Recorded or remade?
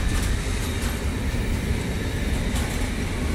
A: recorded